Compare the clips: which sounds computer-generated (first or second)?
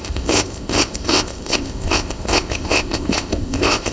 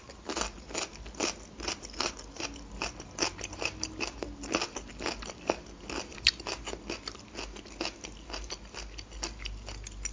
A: first